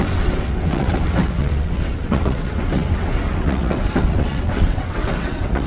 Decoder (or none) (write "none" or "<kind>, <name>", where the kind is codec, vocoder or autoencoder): vocoder, WaveNeXt